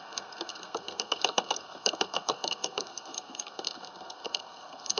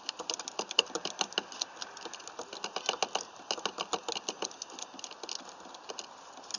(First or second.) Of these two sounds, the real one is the second